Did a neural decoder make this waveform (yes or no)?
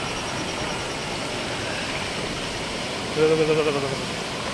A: no